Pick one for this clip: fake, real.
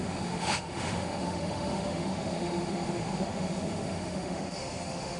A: fake